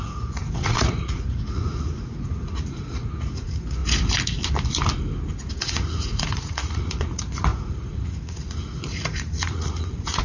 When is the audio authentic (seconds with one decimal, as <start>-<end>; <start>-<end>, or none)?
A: 3.8-5.5